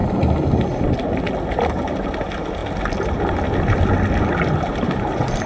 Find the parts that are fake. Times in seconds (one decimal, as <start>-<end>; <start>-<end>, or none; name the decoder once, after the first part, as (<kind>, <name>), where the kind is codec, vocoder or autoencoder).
1.7-2.6 (vocoder, BigVGAN v2); 4.6-5.5